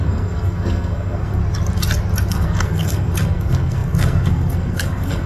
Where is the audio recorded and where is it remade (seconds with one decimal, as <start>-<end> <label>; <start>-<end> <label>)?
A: 0.0-1.4 remade; 1.4-2.3 recorded; 2.3-5.3 remade